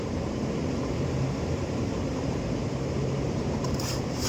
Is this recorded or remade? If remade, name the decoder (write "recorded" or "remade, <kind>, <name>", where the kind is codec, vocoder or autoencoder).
remade, vocoder, BigVGAN v2